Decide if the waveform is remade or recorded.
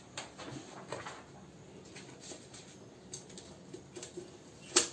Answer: recorded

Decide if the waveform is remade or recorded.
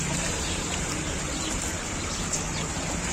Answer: recorded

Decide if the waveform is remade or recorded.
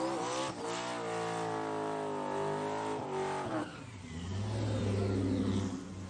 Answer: recorded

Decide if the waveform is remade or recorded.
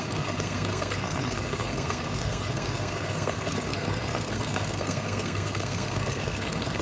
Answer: remade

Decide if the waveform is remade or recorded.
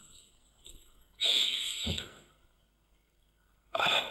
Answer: remade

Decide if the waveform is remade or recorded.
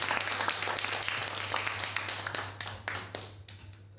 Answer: recorded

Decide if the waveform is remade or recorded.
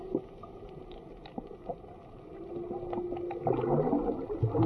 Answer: recorded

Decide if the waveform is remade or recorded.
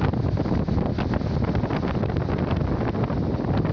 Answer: recorded